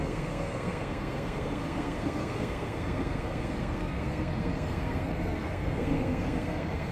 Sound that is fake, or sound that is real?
fake